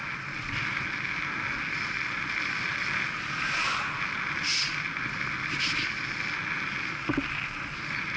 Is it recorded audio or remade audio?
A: recorded